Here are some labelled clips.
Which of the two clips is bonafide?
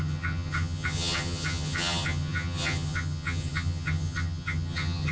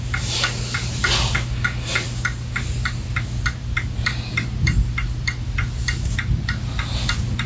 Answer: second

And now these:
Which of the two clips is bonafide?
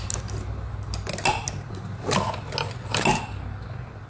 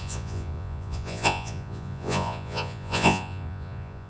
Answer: first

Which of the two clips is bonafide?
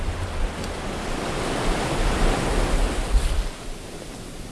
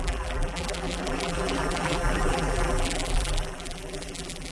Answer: first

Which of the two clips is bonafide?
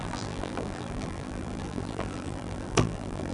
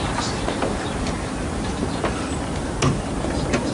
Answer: second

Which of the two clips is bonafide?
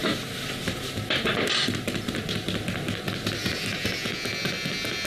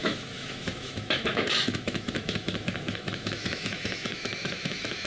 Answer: first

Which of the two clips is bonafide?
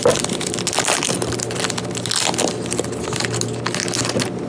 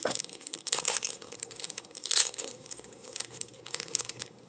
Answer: first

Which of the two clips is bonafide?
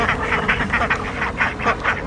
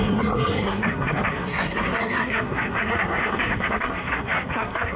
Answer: first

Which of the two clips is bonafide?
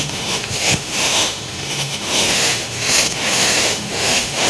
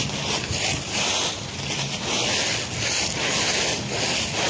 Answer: second